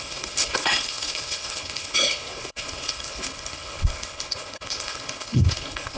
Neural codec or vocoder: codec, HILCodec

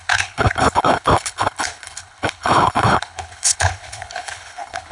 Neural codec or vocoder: codec, HILCodec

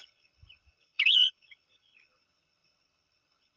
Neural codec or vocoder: codec, HILCodec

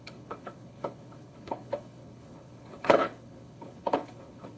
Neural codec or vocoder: codec, HILCodec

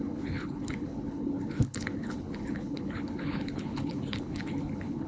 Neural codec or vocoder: codec, HILCodec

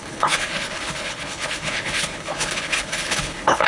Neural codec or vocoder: codec, HILCodec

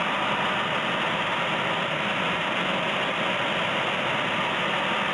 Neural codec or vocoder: none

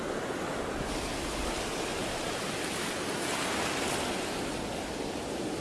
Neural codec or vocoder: none